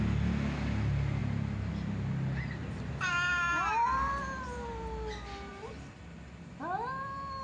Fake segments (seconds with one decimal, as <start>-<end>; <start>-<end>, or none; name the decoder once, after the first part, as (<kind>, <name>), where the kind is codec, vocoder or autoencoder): none